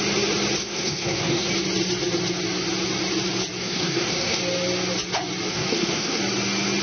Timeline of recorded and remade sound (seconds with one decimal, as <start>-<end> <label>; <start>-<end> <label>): 0.0-0.6 recorded; 0.6-1.5 remade; 1.5-3.6 recorded; 3.6-4.4 remade; 4.4-5.5 recorded; 5.5-6.2 remade; 6.2-6.8 recorded